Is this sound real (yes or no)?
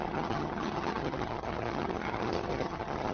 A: no